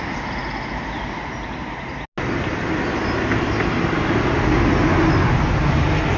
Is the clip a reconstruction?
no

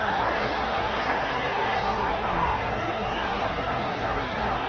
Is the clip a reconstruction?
yes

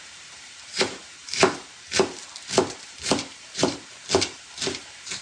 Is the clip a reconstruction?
yes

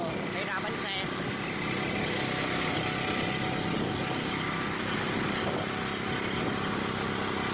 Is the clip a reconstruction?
no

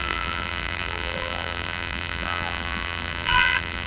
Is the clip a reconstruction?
yes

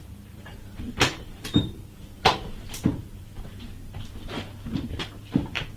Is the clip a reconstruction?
yes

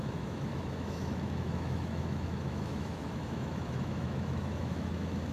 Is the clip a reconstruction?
yes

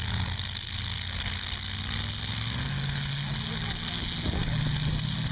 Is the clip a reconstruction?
no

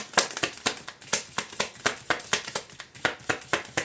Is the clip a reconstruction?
no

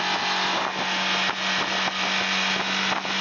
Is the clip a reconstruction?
no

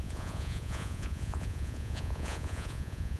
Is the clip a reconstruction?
yes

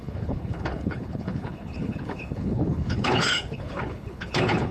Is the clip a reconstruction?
yes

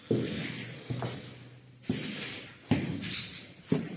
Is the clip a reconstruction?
no